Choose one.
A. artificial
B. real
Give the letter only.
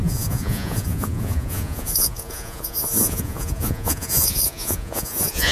A